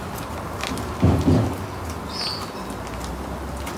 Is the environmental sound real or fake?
real